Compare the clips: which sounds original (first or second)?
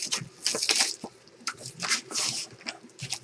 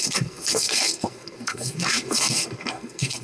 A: first